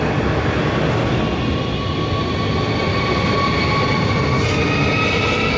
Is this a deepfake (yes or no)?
no